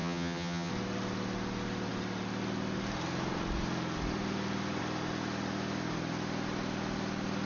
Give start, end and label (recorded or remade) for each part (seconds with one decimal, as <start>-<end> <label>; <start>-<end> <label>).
0.0-0.7 remade; 0.7-7.5 recorded

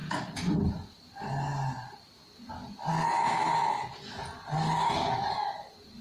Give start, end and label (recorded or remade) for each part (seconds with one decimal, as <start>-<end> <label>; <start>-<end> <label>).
0.0-0.7 remade; 0.7-6.0 recorded

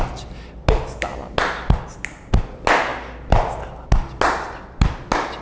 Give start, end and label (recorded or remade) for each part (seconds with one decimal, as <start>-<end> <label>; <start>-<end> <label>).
0.0-5.4 recorded

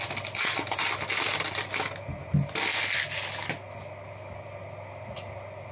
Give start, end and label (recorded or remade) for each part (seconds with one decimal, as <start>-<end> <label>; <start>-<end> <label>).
0.0-5.7 recorded